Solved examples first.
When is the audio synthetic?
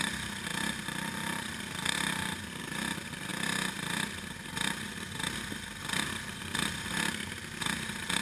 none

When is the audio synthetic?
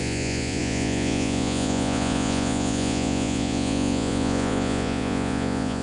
0.0-5.8